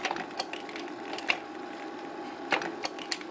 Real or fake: real